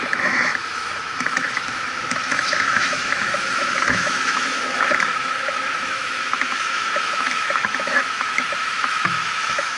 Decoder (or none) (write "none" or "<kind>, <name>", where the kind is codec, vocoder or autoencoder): autoencoder, DAC-VAE